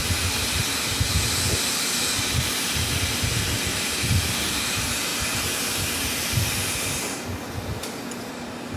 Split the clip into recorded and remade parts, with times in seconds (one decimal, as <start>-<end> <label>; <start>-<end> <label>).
0.0-8.8 recorded